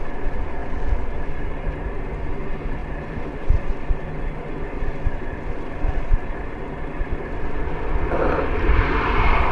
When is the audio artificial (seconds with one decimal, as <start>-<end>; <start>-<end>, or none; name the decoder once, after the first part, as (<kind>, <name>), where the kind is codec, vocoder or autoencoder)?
2.8-7.3 (vocoder, BigVGAN v2)